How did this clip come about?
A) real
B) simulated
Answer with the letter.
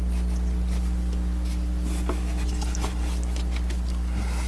A